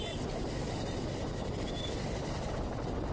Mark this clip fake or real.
real